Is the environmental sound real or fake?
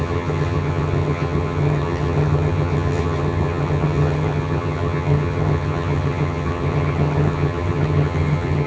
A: fake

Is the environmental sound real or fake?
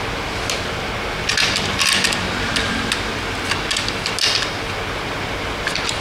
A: real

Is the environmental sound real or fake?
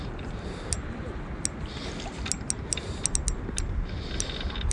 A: real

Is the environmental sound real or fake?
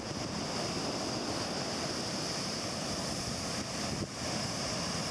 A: real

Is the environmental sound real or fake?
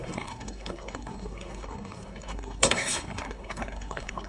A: fake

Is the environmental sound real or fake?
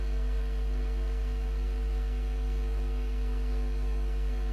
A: fake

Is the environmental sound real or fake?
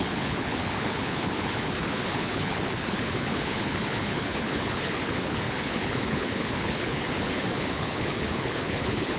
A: fake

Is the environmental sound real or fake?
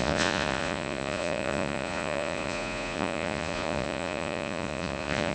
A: fake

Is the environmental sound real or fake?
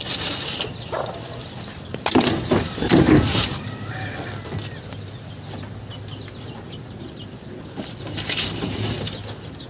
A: real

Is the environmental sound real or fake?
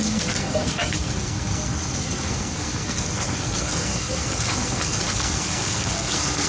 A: fake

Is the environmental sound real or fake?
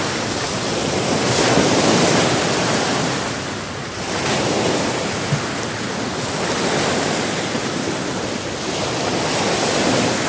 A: real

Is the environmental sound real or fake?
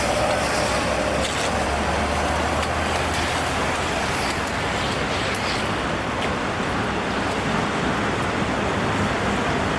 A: real